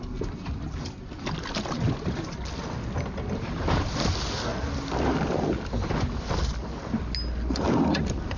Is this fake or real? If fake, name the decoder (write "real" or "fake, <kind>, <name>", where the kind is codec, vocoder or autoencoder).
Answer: real